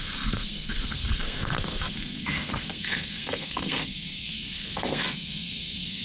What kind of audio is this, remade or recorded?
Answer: remade